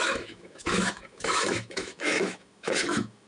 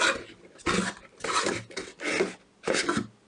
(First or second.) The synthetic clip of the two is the first